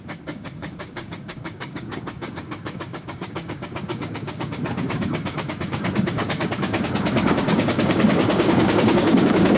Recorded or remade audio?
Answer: remade